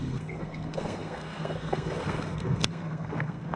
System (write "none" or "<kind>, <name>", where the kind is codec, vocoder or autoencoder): codec, SNAC